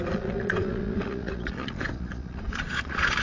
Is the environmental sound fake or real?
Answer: fake